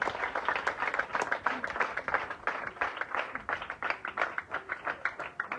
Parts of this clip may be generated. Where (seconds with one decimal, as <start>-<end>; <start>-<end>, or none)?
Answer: 1.1-4.5